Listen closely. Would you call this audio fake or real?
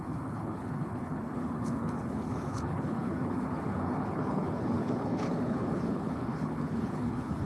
fake